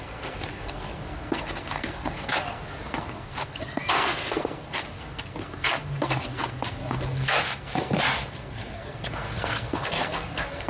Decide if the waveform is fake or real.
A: fake